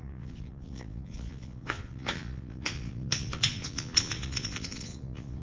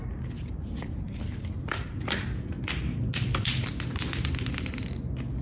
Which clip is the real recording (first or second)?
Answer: second